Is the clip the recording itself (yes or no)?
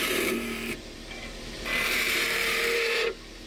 no